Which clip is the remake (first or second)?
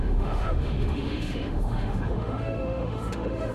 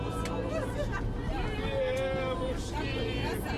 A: first